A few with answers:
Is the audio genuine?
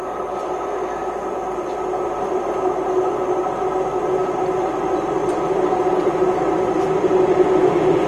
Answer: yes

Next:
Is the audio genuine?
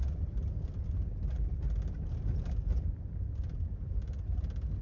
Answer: yes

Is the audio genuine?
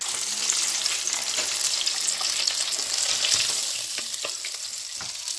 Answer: yes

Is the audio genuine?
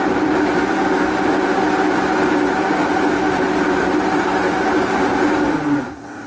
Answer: yes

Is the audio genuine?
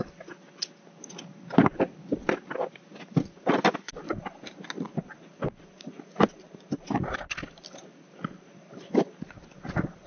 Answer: yes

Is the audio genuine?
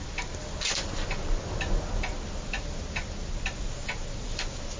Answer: yes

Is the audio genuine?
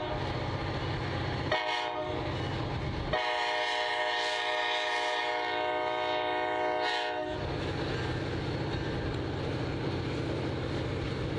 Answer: yes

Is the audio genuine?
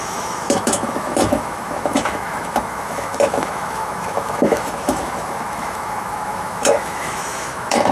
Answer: no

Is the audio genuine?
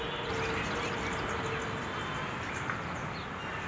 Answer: yes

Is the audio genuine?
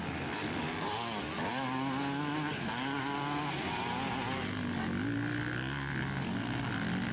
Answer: yes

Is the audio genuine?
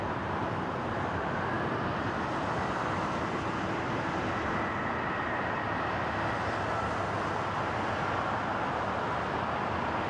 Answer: yes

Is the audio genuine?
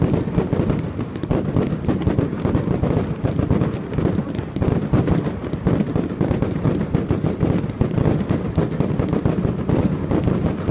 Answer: yes